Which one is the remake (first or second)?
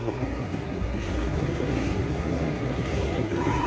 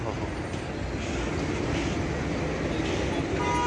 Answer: first